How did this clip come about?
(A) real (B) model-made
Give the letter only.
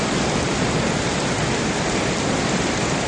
A